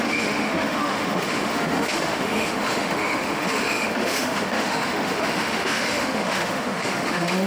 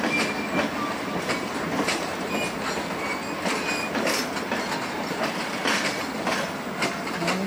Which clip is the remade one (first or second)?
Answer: first